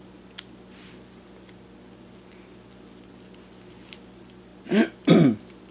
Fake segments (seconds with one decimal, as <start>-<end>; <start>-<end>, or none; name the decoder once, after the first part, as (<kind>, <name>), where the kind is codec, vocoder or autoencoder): none